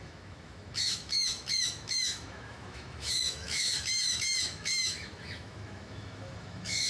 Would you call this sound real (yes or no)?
no